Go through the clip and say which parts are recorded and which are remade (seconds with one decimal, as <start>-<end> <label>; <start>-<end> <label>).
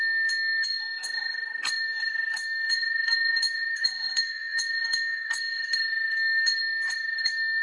0.0-7.6 remade